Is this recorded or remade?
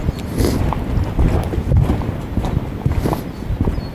recorded